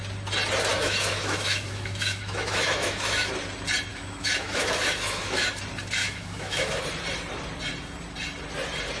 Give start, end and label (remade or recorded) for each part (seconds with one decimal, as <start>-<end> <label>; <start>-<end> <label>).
0.0-0.7 recorded; 0.7-3.3 remade; 3.3-3.9 recorded; 3.9-5.6 remade; 5.6-6.0 recorded; 6.0-6.8 remade; 6.8-9.0 recorded